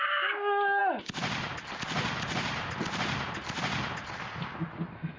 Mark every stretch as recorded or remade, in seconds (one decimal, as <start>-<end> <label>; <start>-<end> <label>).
0.0-5.2 recorded